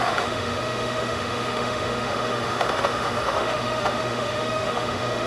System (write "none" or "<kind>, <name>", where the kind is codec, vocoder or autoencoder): autoencoder, DAC-VAE